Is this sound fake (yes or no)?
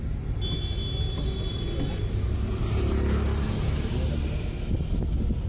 no